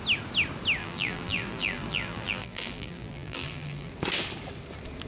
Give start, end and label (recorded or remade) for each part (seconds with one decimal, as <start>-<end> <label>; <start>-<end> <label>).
0.0-0.8 recorded; 0.8-3.9 remade; 3.9-5.1 recorded